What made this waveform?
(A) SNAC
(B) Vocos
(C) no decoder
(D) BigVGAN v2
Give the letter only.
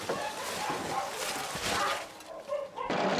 C